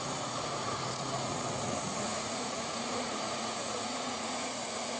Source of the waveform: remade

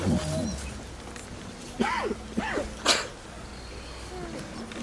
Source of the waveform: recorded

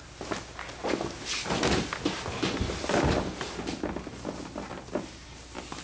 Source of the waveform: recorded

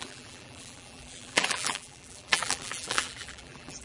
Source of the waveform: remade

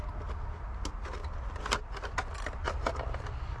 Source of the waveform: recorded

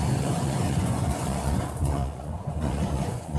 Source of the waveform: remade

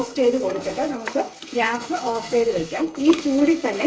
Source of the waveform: remade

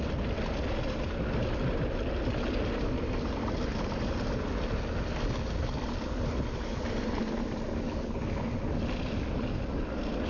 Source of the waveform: recorded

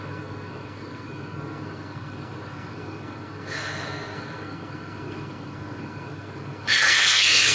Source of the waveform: remade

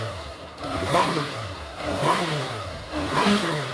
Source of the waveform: remade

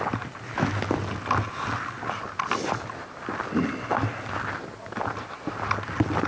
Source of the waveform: recorded